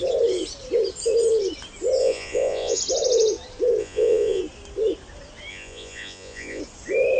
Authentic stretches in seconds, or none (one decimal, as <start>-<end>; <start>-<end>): 0.0-2.0; 2.8-3.8; 4.4-5.5; 6.6-7.2